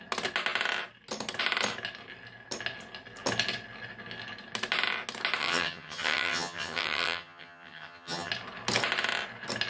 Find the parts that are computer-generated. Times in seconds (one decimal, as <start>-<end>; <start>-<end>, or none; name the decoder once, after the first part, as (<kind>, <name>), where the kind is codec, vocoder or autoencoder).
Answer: 5.4-8.3 (vocoder, HiFi-GAN)